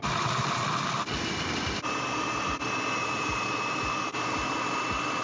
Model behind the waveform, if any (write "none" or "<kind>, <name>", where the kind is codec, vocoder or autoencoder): none